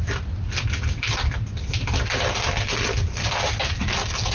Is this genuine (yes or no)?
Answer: yes